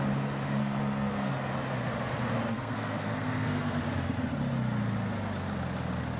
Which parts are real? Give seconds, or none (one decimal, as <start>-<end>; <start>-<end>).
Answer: 0.0-0.6; 1.3-2.5; 3.8-6.2